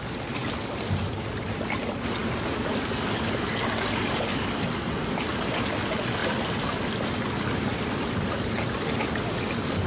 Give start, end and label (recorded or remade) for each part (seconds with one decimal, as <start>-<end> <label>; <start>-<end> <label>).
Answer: 0.0-9.9 recorded